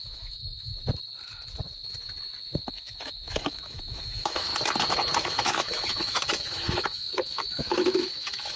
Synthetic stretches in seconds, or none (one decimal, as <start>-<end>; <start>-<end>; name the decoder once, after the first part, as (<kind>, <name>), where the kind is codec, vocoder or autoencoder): 0.0-0.7 (autoencoder, DAC-VAE); 2.7-4.5; 5.2-8.6